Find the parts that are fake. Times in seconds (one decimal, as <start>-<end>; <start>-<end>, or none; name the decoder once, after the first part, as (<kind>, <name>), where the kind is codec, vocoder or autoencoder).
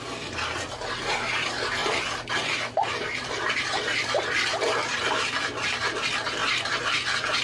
1.8-5.3 (vocoder, BigVGAN v2)